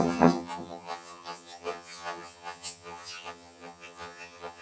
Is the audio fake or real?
fake